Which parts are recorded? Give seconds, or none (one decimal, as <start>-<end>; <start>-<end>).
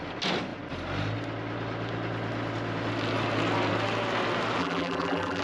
0.0-4.6